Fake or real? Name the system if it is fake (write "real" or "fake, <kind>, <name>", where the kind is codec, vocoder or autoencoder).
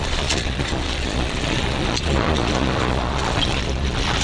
fake, vocoder, Vocos